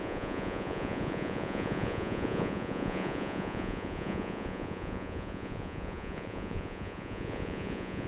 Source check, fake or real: fake